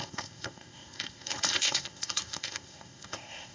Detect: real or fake fake